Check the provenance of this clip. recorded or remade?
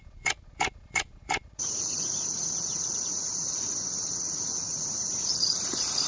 remade